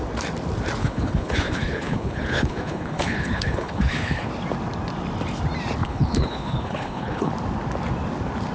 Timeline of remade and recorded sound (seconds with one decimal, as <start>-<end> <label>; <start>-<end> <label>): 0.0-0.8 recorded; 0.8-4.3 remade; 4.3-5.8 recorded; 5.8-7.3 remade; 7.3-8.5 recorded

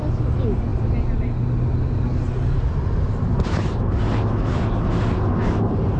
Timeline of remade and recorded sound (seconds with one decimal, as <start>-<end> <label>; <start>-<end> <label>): 0.0-6.0 recorded

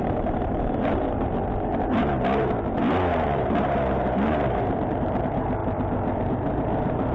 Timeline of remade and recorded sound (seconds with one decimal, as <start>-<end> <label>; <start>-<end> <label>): 0.0-1.4 remade; 1.4-3.1 recorded; 3.1-5.6 remade; 5.6-6.2 recorded; 6.2-7.1 remade

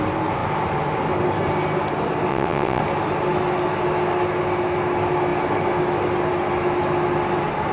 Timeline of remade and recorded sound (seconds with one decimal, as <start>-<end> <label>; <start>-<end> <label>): 0.0-2.3 recorded; 2.3-2.8 remade; 2.8-7.7 recorded